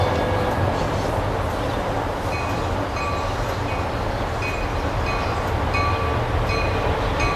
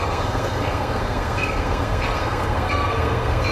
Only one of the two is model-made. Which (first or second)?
second